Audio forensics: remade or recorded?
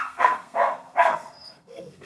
remade